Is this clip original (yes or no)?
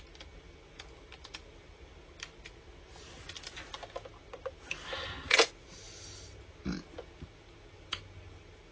yes